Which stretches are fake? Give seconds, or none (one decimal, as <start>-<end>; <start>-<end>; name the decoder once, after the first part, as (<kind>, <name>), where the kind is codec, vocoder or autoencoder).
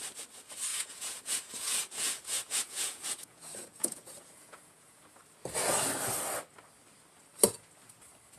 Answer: 0.7-5.2 (vocoder, Vocos)